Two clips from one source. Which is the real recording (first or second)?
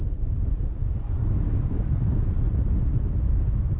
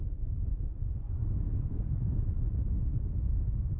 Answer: first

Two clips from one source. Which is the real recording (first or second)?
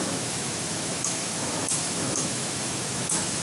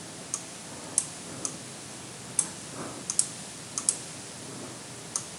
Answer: second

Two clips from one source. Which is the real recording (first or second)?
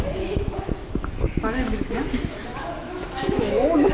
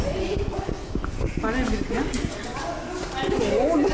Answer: second